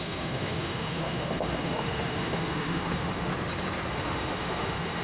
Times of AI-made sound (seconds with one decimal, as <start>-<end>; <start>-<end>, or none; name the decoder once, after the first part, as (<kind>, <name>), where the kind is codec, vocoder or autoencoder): 0.0-3.3 (autoencoder, DAC-VAE); 3.9-5.0